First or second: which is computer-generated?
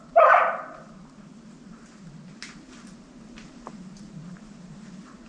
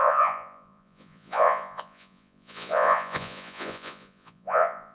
second